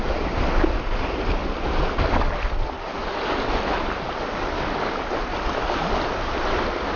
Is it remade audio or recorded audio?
recorded